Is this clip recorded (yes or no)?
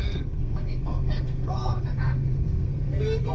no